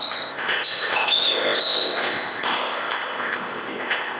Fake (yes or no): yes